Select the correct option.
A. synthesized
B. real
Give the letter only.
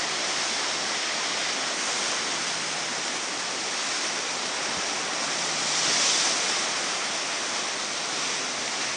B